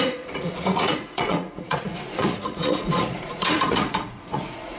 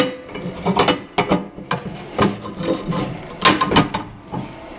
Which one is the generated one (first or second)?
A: first